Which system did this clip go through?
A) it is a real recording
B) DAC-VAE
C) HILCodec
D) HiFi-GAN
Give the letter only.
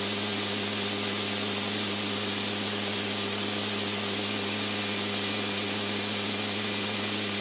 A